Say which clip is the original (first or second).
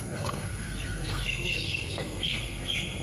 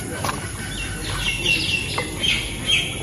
second